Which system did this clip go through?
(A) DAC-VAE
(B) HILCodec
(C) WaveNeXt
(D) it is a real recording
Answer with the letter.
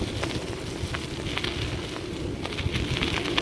D